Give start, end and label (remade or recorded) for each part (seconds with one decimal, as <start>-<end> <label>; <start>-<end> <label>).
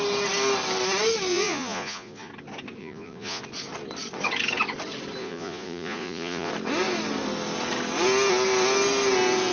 0.0-1.3 recorded; 1.3-2.3 remade; 2.3-2.8 recorded; 2.8-3.4 remade; 3.4-5.2 recorded; 5.2-6.5 remade; 6.5-9.5 recorded